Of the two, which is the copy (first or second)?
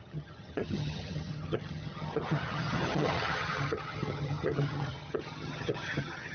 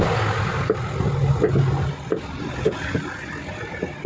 first